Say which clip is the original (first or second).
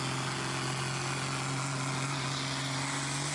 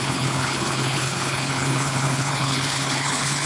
first